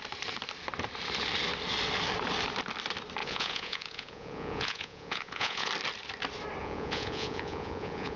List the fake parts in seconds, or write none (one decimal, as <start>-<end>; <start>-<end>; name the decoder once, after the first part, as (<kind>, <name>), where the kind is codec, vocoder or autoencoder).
3.2-5.7 (vocoder, Vocos); 6.6-8.2